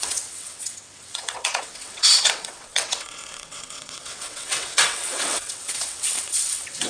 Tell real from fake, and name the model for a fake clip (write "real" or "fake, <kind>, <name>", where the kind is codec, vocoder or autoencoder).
fake, vocoder, WaveNeXt